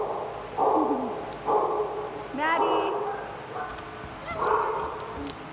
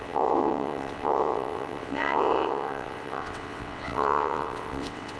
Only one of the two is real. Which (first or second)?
first